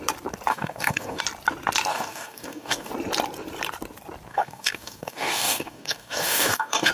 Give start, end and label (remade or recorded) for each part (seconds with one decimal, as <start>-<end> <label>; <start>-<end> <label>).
0.0-0.5 recorded; 0.5-1.2 remade; 1.2-1.9 recorded; 1.9-2.9 remade; 2.9-4.3 recorded; 4.3-6.9 remade